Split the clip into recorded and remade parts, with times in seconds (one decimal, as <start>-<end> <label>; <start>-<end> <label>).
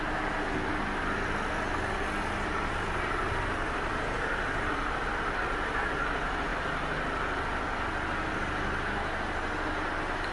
0.0-10.3 recorded